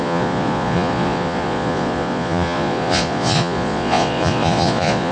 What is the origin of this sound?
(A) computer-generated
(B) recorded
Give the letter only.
A